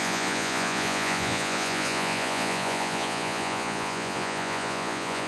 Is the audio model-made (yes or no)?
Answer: yes